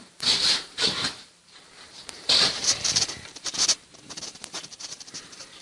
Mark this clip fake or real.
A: fake